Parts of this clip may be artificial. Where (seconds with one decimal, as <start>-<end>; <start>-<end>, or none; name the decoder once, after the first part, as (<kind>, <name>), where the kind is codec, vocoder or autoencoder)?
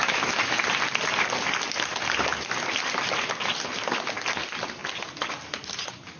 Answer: 0.0-0.6 (autoencoder, DAC-VAE)